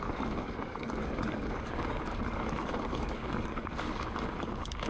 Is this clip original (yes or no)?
no